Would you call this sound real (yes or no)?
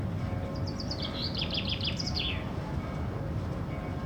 no